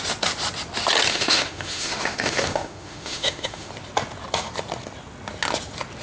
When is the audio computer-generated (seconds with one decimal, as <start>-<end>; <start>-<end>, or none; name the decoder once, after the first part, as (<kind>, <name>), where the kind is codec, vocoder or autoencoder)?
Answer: 1.1-3.7 (autoencoder, DAC-VAE)

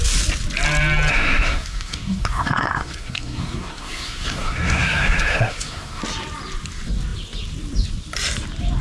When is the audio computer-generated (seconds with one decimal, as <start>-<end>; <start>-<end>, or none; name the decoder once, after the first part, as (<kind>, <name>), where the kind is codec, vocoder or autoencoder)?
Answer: 1.1-6.0 (codec, SNAC)

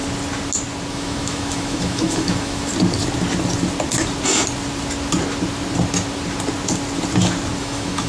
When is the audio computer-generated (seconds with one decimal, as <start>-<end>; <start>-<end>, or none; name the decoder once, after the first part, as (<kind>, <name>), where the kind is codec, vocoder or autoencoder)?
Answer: 0.9-2.7 (autoencoder, DAC-VAE); 7.6-8.1

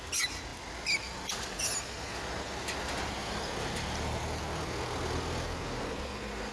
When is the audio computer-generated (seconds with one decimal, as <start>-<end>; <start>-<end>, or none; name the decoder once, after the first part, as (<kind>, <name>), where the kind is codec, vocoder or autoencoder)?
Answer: none

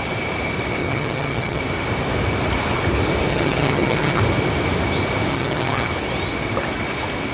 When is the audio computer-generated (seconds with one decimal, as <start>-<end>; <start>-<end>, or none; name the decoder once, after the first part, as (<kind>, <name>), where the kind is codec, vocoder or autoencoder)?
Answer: 0.8-1.6 (vocoder, HiFi-GAN); 3.3-4.2; 5.3-5.9

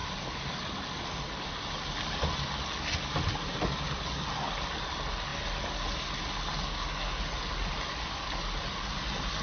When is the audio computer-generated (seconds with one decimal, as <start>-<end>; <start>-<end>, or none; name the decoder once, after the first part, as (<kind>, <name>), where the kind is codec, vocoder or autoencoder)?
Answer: none

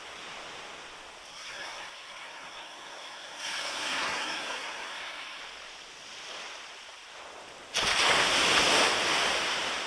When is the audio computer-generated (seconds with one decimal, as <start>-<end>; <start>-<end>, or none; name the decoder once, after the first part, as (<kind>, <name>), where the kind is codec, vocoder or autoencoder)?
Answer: 1.3-5.4 (codec, SNAC)